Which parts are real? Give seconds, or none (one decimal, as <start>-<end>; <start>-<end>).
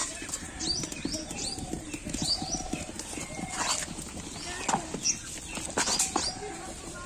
2.0-6.3